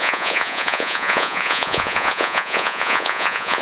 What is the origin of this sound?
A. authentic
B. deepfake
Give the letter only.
B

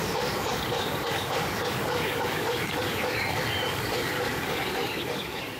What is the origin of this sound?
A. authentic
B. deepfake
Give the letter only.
B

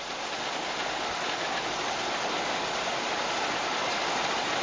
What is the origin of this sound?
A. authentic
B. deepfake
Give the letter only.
A